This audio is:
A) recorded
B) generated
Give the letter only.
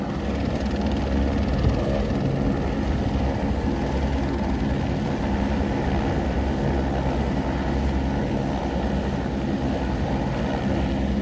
A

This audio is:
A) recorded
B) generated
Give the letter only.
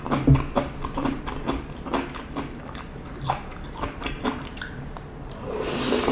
A